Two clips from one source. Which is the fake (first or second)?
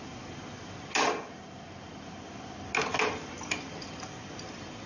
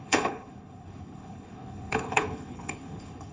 second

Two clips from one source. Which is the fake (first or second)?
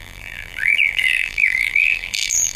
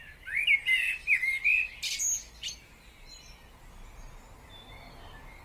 first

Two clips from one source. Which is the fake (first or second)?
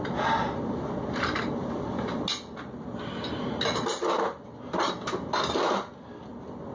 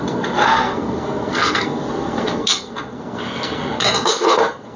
second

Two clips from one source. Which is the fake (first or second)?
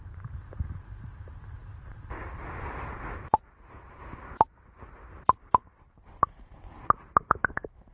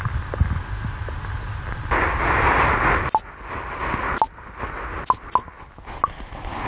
first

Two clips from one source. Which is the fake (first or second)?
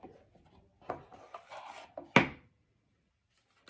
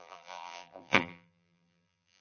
second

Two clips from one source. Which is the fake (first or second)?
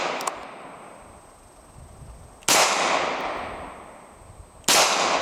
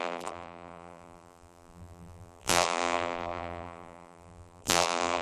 second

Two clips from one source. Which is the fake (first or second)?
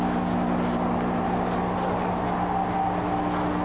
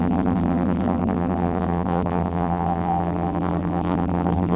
second